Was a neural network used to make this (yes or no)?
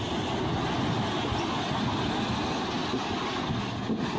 no